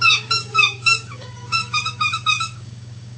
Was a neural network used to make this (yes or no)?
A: yes